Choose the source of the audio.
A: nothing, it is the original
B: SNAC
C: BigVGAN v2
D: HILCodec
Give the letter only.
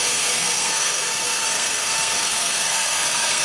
B